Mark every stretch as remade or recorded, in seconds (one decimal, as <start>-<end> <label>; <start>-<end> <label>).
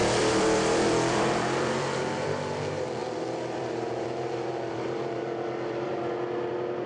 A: 0.0-2.0 remade; 2.0-3.0 recorded; 3.0-6.0 remade; 6.0-6.9 recorded